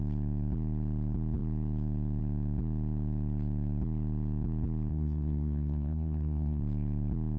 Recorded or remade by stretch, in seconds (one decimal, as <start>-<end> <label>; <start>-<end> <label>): 0.0-4.9 recorded; 4.9-6.6 remade; 6.6-7.4 recorded